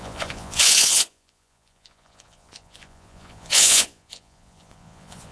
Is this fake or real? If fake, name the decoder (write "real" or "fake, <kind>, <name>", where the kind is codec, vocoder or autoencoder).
fake, vocoder, Vocos